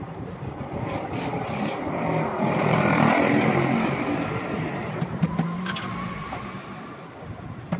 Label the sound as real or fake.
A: fake